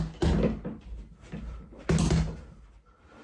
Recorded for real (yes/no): yes